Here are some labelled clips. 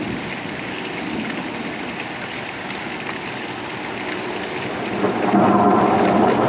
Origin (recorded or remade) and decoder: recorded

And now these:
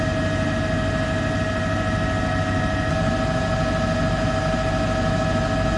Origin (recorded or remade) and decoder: recorded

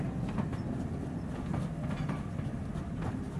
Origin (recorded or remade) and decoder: recorded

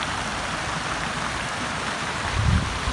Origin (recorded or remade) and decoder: remade, vocoder, BigVGAN v2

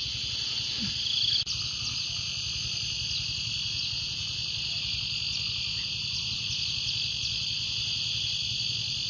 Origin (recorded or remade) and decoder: recorded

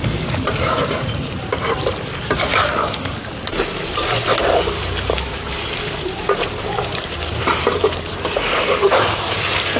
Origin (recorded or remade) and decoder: remade, vocoder, BigVGAN v2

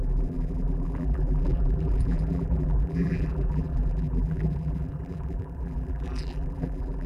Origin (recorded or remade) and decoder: remade, vocoder, BigVGAN v2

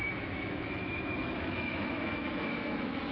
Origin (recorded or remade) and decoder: remade, autoencoder, DAC-VAE